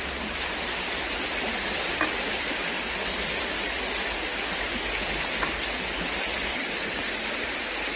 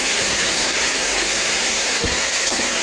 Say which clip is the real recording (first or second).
first